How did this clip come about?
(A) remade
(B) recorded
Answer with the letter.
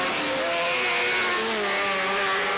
B